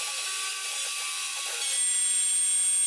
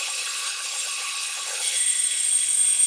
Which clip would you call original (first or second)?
first